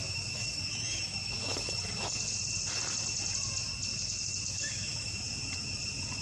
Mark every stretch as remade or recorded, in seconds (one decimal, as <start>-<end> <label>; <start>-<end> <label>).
0.0-2.2 remade; 2.2-3.9 recorded; 3.9-5.2 remade; 5.2-6.2 recorded

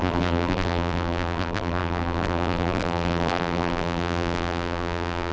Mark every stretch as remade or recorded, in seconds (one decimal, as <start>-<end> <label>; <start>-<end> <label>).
0.0-5.3 remade

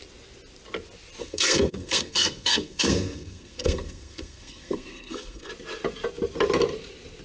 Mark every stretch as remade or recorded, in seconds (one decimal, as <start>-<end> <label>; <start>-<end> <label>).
0.0-1.2 recorded; 1.2-5.5 remade; 5.5-7.2 recorded

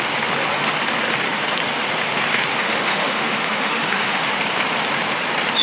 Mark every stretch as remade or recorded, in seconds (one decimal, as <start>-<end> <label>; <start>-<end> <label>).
0.0-2.5 recorded; 2.5-4.3 remade; 4.3-5.6 recorded

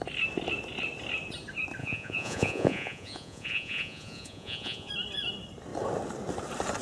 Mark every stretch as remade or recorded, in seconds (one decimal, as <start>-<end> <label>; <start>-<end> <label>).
0.0-1.8 recorded; 1.8-4.9 remade; 4.9-6.8 recorded